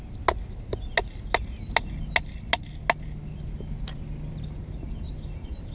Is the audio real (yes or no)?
yes